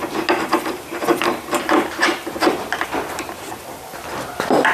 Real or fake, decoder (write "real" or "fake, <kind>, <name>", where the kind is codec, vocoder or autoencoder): real